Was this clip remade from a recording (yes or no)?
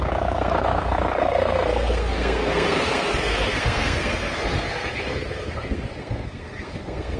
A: yes